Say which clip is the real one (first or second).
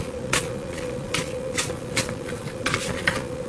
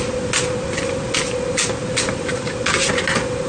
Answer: second